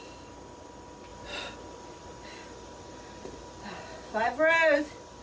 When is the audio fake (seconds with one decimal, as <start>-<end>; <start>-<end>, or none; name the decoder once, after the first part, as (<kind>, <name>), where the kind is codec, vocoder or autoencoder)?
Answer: none